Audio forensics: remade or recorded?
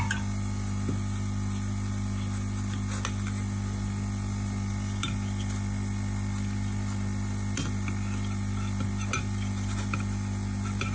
recorded